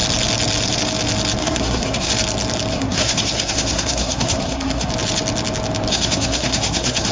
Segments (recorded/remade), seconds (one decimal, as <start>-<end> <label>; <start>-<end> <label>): 0.0-1.4 recorded; 1.4-2.1 remade; 2.1-2.7 recorded; 2.7-4.9 remade; 4.9-5.9 recorded; 5.9-7.1 remade